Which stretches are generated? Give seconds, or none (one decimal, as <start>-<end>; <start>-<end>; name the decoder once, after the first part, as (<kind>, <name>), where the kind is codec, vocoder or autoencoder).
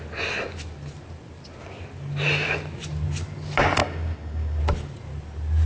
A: 3.8-4.6 (codec, DAC)